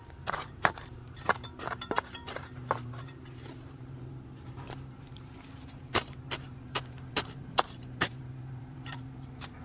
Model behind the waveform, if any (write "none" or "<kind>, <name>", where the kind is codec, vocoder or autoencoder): vocoder, BigVGAN v2